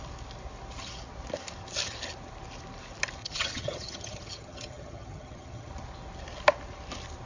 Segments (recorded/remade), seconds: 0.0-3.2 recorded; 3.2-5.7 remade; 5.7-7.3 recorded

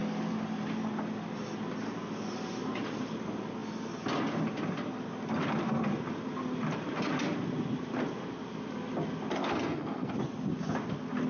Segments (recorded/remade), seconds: 0.0-9.4 recorded; 9.4-10.1 remade; 10.1-11.3 recorded

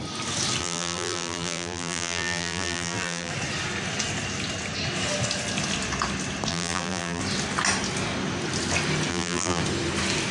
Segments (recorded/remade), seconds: 0.0-0.6 recorded; 0.6-3.3 remade; 3.3-6.5 recorded; 6.5-7.2 remade; 7.2-9.1 recorded; 9.1-9.6 remade; 9.6-10.3 recorded